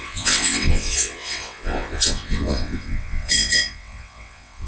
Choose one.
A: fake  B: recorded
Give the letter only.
A